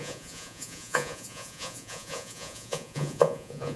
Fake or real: fake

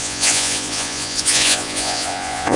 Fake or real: fake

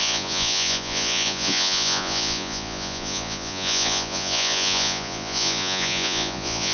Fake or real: fake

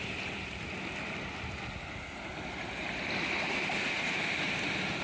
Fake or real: real